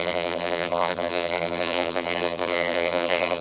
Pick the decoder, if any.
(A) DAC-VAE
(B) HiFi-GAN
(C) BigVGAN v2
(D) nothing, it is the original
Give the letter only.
C